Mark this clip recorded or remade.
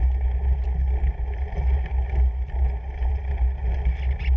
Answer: recorded